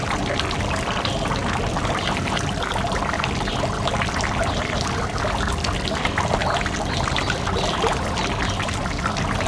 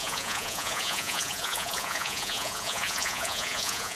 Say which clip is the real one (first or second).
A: first